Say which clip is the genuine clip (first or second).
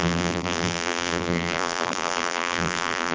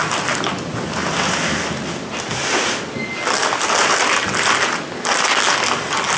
second